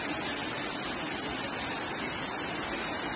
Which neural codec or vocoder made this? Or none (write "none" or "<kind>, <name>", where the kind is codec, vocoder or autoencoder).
none